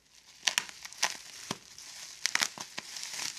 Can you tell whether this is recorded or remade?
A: recorded